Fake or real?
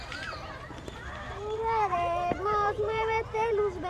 fake